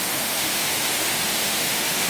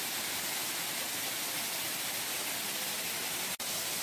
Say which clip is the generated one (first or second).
first